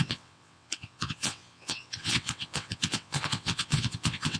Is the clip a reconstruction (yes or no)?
yes